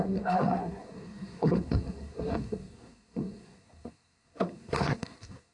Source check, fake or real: fake